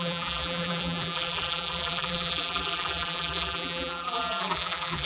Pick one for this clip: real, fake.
fake